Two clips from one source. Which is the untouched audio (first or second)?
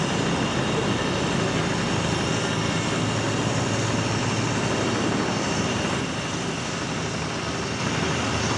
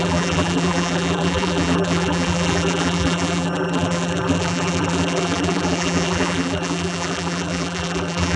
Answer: first